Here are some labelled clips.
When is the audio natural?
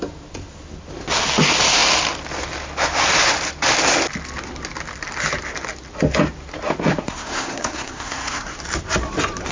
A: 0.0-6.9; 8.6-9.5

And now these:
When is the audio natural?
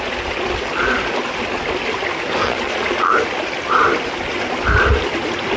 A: 0.0-2.4; 3.1-5.6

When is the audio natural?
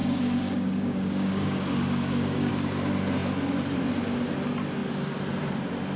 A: 2.5-6.0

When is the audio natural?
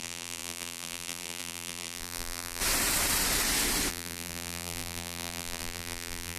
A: 2.6-3.9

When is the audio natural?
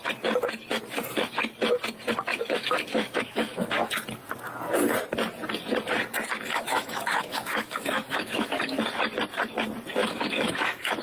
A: 0.0-2.3; 3.9-6.5; 8.8-10.0